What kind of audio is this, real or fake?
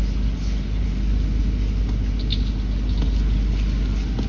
real